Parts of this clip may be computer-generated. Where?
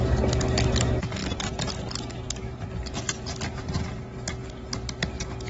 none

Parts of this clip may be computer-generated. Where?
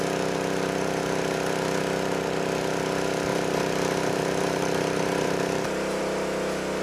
3.3-6.0 (vocoder, BigVGAN v2)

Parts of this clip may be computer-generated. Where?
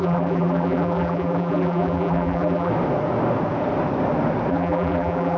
0.0-2.7 (vocoder, BigVGAN v2); 4.5-5.4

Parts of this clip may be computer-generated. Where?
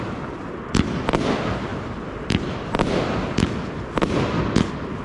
1.7-3.9 (vocoder, BigVGAN v2)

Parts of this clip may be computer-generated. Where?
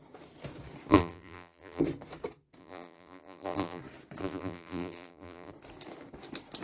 0.9-1.8 (vocoder, BigVGAN v2); 2.6-3.8; 4.2-5.5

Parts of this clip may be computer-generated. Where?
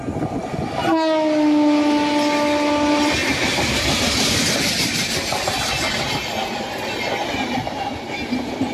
3.2-4.3 (vocoder, BigVGAN v2)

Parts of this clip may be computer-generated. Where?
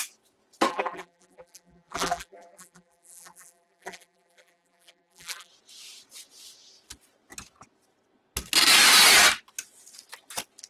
0.7-5.5 (vocoder, BigVGAN v2)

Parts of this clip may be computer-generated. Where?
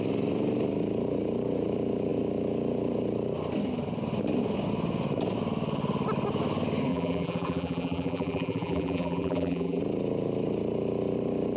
6.9-9.8 (vocoder, BigVGAN v2)